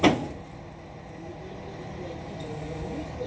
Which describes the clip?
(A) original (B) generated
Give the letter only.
A